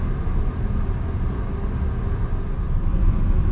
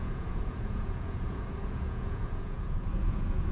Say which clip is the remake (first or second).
second